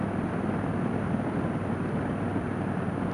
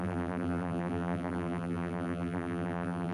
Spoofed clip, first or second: second